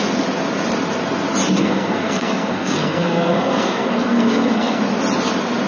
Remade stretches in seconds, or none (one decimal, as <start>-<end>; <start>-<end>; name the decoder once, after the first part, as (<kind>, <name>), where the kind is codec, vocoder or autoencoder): 1.6-4.8 (codec, SNAC)